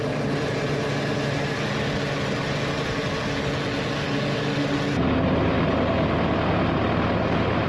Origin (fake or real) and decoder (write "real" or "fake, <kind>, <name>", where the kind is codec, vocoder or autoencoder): real